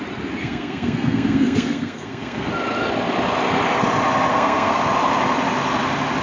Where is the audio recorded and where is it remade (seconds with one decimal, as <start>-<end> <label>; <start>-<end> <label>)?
0.0-0.4 recorded; 0.4-2.5 remade; 2.5-4.3 recorded; 4.3-4.8 remade; 4.8-6.2 recorded